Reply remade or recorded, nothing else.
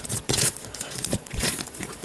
remade